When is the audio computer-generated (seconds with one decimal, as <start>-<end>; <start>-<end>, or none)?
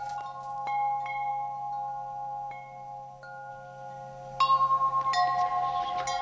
none